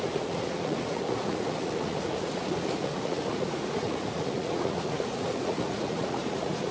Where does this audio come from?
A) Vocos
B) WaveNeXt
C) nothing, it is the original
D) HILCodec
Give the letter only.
A